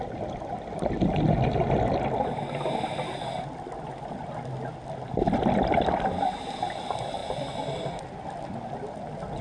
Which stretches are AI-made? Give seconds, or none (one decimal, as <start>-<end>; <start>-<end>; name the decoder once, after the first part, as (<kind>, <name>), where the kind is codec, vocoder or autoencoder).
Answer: none